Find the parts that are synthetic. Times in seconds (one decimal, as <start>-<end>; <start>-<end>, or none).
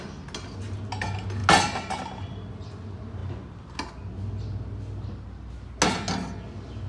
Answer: none